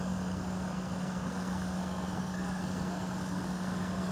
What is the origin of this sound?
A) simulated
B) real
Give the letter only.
A